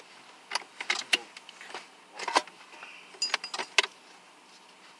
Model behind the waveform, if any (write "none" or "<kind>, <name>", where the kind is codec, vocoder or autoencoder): none